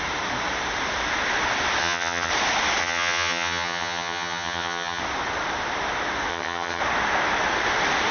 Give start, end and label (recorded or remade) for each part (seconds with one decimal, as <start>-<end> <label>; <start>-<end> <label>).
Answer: 0.0-1.8 recorded; 1.8-2.3 remade; 2.3-2.8 recorded; 2.8-5.0 remade; 5.0-6.3 recorded; 6.3-6.8 remade; 6.8-8.1 recorded